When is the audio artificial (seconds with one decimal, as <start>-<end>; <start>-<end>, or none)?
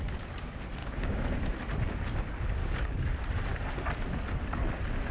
0.8-1.3; 2.6-3.1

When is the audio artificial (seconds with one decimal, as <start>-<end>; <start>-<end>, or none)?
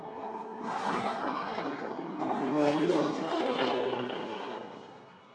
0.0-5.3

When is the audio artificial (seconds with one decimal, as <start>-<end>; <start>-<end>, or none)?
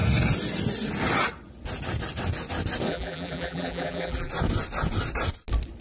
2.9-4.3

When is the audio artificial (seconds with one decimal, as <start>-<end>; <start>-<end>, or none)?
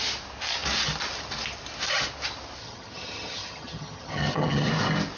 2.6-4.7